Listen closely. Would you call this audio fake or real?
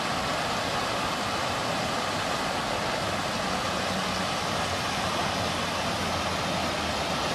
real